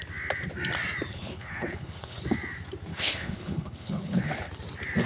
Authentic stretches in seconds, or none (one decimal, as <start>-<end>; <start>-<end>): 0.0-1.1; 2.2-2.9; 4.5-5.1